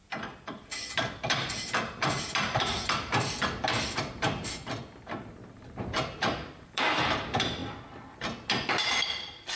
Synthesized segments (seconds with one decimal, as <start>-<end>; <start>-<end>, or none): 0.0-7.6; 8.2-9.6

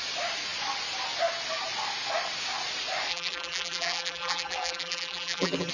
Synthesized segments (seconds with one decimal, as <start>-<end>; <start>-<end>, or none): 3.1-5.7

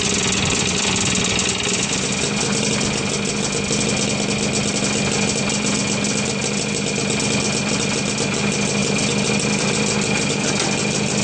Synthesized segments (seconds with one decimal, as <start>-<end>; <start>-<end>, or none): none

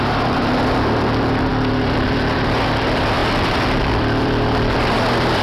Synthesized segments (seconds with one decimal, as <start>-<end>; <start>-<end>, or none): 0.0-3.2; 3.8-5.4